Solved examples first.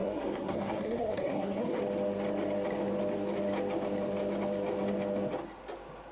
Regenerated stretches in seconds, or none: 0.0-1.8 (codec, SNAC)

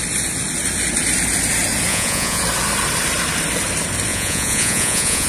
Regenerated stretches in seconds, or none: 1.9-2.4 (vocoder, Vocos); 4.1-5.3

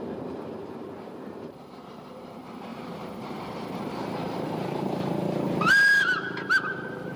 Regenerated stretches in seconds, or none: 0.0-7.2 (vocoder, BigVGAN v2)

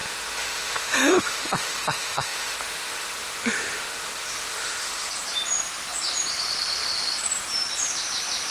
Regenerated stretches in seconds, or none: 0.0-5.1 (autoencoder, DAC-VAE)

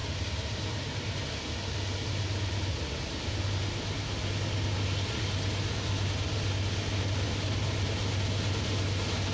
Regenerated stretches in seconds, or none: none

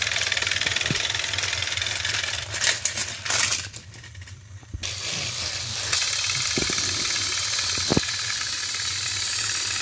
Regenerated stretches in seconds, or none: 3.0-6.0 (vocoder, BigVGAN v2); 7.9-9.8